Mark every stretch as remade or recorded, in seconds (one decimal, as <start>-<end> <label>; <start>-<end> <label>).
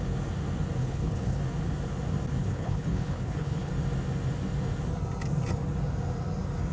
0.0-0.8 recorded; 0.8-1.4 remade; 1.4-2.4 recorded; 2.4-3.7 remade; 3.7-6.7 recorded